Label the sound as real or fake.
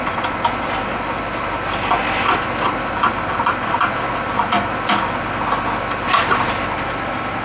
real